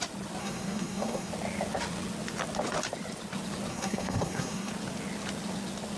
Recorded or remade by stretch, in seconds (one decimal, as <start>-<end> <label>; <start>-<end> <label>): 0.0-0.4 recorded; 0.4-1.3 remade; 1.3-3.7 recorded; 3.7-4.7 remade; 4.7-6.0 recorded